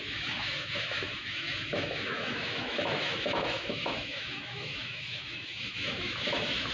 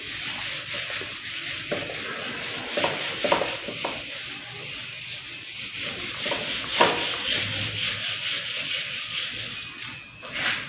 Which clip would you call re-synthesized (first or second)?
first